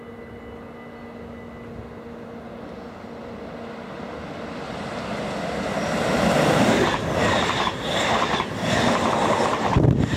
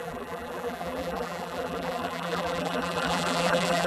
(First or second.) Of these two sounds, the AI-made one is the second